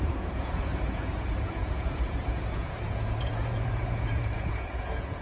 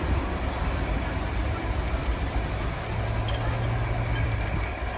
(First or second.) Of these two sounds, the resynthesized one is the first